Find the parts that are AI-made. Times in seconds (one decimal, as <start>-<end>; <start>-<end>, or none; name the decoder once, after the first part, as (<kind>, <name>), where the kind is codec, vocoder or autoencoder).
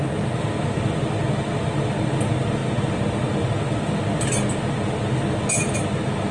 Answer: none